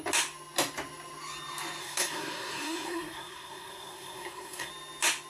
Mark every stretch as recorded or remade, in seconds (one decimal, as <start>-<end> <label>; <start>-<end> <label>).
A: 0.0-1.8 recorded; 1.8-4.7 remade; 4.7-5.3 recorded